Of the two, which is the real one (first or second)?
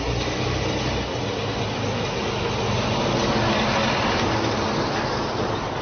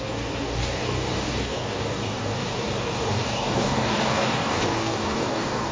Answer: first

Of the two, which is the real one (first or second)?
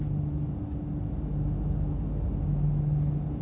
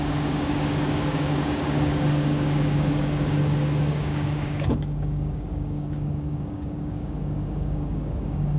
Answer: first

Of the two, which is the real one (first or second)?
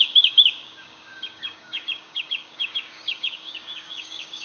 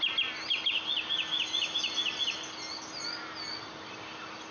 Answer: second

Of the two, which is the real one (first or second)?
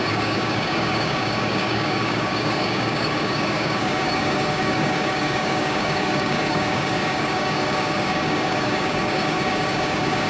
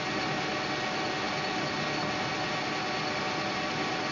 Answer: second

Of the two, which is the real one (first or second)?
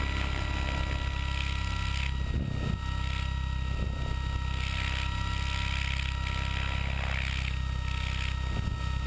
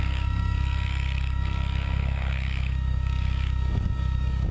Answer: first